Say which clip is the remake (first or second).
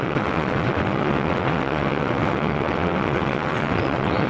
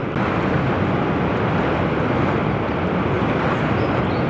first